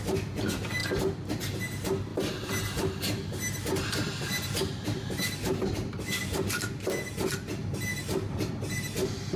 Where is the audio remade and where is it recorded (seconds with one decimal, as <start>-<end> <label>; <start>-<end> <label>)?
0.0-2.1 recorded; 2.1-6.6 remade; 6.6-7.9 recorded; 7.9-8.5 remade; 8.5-9.4 recorded